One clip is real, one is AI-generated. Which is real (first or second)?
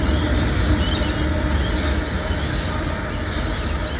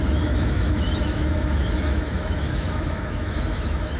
first